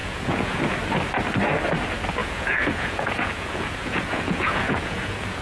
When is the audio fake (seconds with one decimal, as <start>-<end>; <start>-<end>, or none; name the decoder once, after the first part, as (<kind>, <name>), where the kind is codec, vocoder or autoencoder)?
0.0-0.6 (vocoder, Vocos); 2.2-5.4